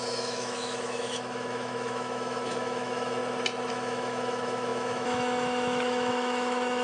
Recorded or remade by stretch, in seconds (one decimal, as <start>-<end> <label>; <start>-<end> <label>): 0.0-3.2 remade; 3.2-3.7 recorded; 3.7-6.8 remade